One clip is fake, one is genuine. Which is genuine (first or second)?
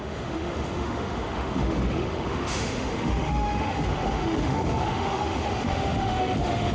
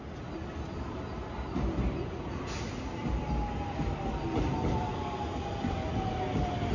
second